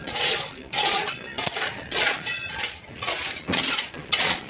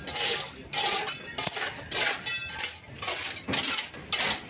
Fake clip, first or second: first